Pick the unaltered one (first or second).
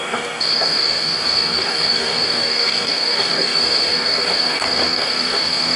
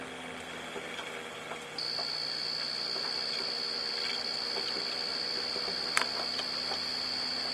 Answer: second